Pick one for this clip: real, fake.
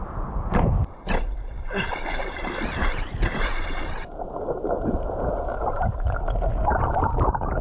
fake